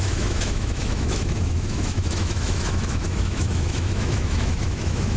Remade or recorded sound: remade